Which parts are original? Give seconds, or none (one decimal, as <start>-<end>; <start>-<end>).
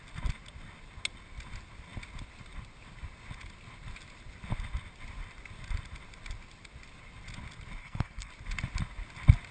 0.0-7.8; 8.3-9.5